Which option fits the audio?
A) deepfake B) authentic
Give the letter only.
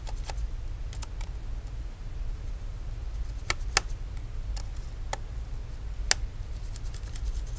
B